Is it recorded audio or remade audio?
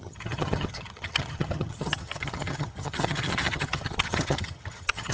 remade